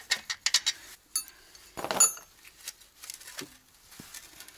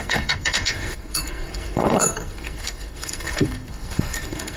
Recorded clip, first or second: first